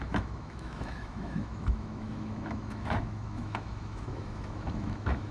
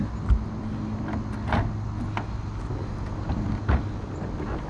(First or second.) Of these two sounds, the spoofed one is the first